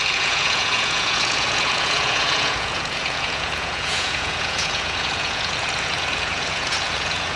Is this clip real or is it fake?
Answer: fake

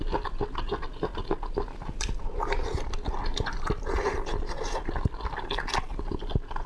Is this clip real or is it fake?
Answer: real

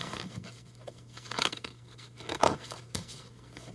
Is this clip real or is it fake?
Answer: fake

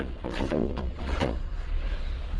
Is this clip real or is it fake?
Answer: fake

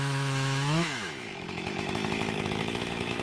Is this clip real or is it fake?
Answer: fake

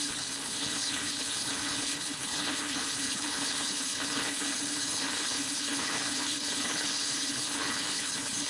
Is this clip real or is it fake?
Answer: fake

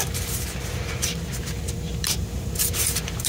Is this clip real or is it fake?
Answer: fake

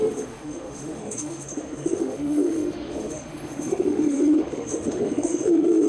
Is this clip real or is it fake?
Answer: fake